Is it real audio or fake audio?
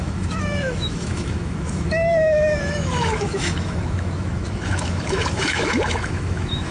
fake